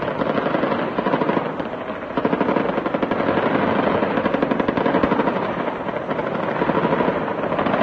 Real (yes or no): yes